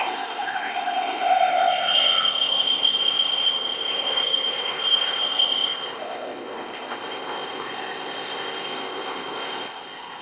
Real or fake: fake